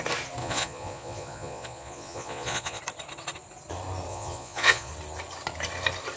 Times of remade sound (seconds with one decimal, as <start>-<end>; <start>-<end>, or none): 0.4-2.8; 4.1-4.9